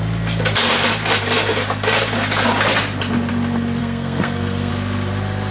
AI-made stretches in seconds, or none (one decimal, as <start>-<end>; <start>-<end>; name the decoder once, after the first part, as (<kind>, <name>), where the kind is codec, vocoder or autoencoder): 3.8-4.7 (codec, SNAC)

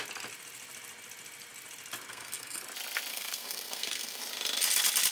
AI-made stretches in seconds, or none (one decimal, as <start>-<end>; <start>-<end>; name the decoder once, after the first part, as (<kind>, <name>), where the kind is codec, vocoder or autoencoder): 2.1-2.6 (codec, SNAC); 3.1-4.2

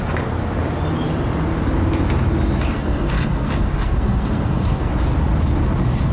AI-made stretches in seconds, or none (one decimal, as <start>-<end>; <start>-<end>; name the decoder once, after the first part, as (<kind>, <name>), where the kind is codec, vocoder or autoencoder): 2.7-4.9 (codec, SNAC)